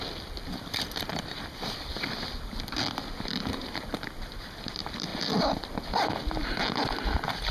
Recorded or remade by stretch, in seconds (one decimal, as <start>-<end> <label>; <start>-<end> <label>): 0.0-7.5 recorded

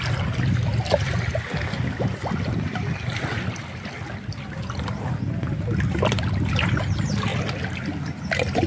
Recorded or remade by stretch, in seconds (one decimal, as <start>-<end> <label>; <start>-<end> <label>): 0.0-8.7 recorded

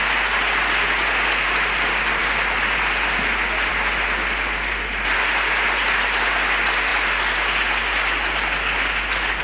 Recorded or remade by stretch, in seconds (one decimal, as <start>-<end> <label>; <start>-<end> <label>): 0.0-9.4 recorded

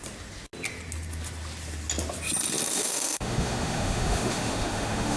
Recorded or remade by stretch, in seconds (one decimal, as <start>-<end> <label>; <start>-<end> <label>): 0.0-2.7 recorded; 2.7-5.2 remade

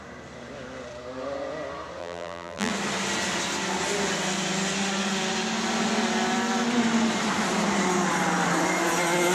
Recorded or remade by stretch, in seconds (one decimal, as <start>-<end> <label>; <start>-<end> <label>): 0.0-2.0 recorded; 2.0-2.7 remade; 2.7-9.3 recorded